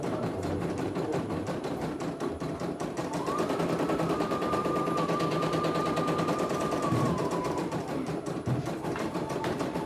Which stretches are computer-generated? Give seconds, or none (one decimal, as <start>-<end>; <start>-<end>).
0.0-3.0; 3.6-4.6; 6.2-9.9